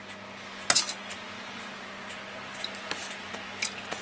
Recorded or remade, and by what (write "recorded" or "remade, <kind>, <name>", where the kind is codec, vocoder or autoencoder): recorded